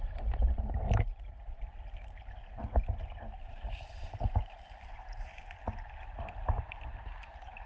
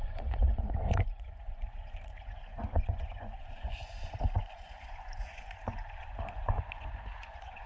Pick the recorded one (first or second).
first